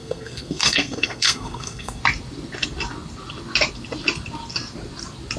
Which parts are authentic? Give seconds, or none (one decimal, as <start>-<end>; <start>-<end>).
2.0-5.4